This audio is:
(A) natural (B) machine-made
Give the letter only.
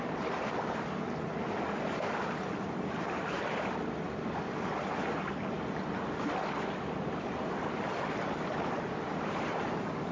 A